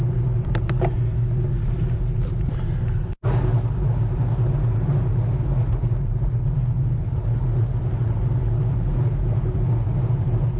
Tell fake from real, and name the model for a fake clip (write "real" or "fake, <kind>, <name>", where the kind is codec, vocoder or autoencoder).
real